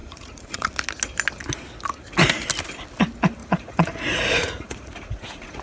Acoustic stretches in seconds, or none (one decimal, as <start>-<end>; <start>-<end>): 0.7-3.4